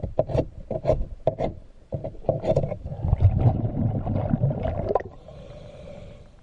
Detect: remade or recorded remade